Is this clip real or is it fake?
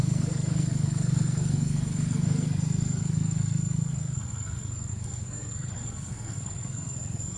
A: fake